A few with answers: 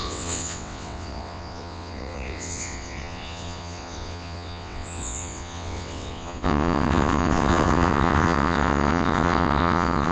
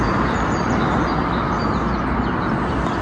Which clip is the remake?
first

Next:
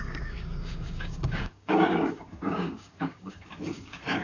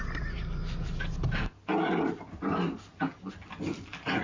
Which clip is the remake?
first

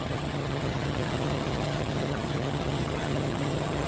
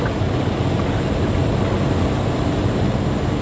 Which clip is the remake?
first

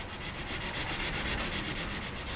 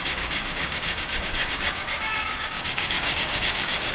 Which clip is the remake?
second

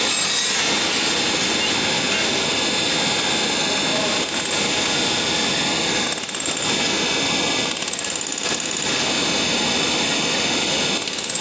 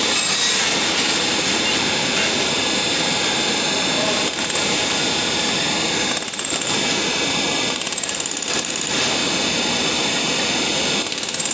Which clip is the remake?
second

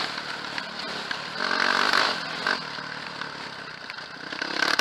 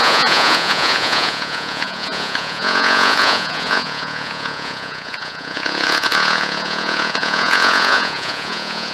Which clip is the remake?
second